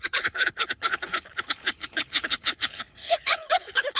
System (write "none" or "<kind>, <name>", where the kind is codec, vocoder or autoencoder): codec, HILCodec